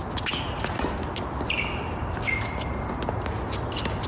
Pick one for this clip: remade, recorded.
recorded